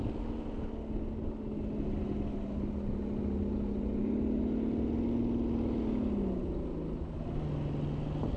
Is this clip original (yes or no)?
yes